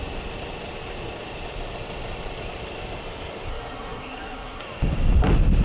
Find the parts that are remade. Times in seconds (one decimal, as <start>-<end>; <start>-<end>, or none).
3.5-4.6